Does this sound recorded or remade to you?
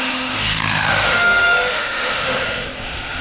remade